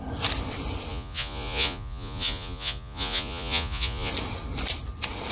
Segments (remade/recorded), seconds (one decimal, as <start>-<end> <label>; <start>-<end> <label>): 0.0-0.9 recorded; 0.9-4.1 remade; 4.1-5.3 recorded